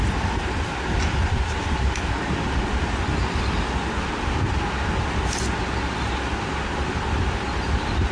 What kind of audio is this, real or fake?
real